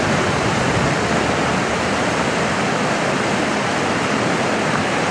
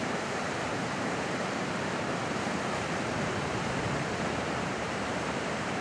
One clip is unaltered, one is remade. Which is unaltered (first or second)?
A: first